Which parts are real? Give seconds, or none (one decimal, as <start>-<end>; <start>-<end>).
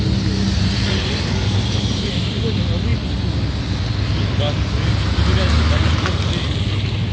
0.0-7.1